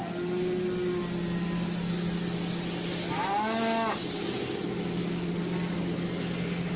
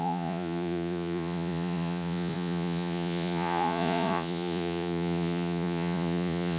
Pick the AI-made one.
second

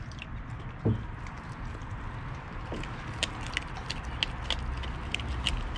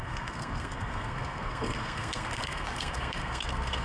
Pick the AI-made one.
second